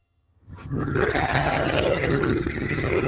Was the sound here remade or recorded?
remade